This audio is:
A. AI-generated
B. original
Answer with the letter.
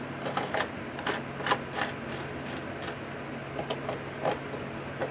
B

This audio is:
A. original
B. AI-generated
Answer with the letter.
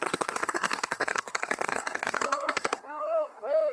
B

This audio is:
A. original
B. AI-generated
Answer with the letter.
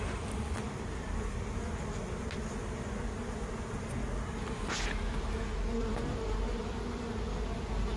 A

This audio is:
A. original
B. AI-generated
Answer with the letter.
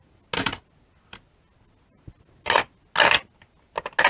A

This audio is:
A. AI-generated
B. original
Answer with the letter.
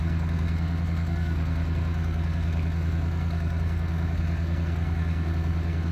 A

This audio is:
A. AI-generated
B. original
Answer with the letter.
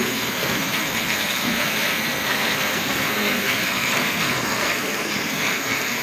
A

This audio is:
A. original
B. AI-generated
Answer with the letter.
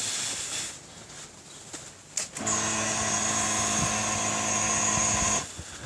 A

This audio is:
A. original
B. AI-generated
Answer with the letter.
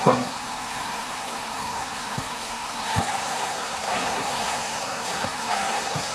B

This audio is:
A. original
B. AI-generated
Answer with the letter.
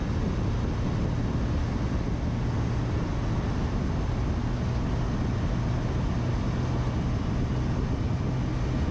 A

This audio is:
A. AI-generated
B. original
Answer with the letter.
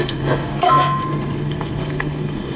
A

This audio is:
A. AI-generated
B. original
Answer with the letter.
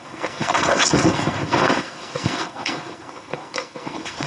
A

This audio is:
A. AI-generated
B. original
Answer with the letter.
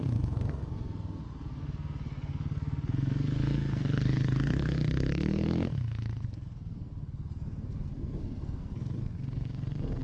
A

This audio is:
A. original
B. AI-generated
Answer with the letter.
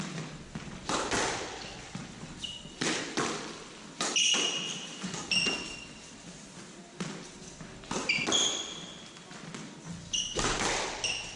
A